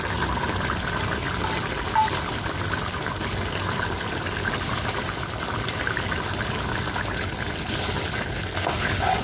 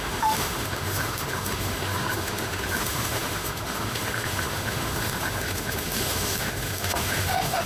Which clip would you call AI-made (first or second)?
second